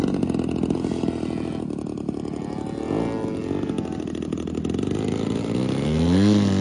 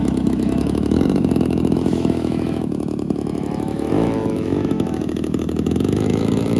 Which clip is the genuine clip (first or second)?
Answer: first